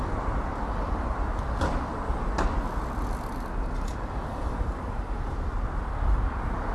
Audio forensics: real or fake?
real